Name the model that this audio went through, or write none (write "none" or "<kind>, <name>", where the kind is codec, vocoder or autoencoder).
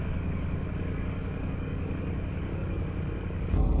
codec, DAC